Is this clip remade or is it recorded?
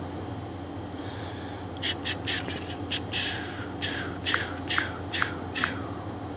recorded